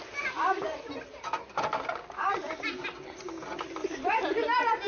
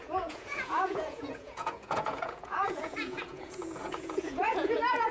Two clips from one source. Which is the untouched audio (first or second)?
first